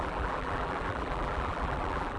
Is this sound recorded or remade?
remade